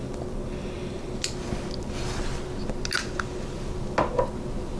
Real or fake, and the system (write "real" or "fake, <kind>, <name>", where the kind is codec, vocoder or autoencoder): real